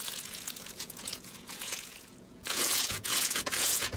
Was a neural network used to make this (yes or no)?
yes